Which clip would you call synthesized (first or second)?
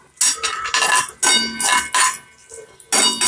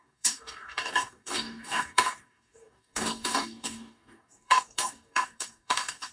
second